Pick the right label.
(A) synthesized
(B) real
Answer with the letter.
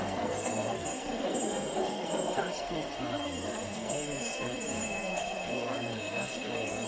A